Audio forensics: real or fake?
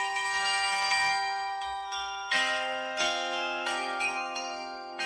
fake